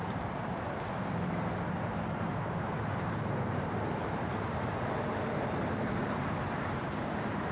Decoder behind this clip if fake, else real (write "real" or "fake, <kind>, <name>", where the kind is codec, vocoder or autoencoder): fake, vocoder, BigVGAN v2